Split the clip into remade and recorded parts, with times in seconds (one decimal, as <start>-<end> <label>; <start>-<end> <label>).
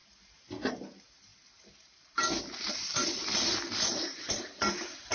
0.0-5.1 recorded